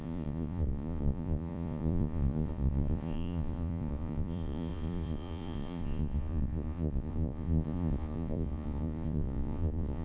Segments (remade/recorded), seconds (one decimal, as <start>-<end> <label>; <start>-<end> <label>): 0.0-10.0 remade